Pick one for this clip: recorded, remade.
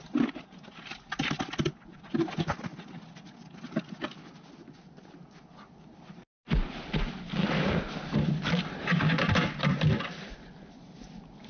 recorded